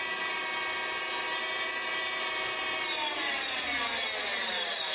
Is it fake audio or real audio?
real